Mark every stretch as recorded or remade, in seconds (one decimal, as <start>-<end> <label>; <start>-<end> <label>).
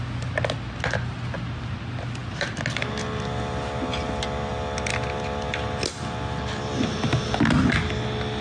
0.0-8.4 recorded